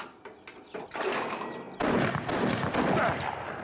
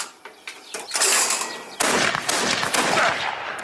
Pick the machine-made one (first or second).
second